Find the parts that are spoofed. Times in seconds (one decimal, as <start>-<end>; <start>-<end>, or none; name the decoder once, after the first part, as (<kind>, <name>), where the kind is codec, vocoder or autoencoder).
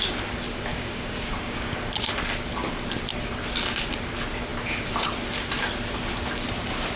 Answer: 0.7-1.8 (codec, DAC)